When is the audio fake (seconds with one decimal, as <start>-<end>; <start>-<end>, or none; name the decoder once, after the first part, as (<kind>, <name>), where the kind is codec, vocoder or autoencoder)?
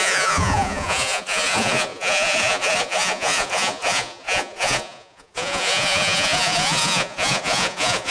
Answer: 0.0-8.1 (vocoder, Vocos)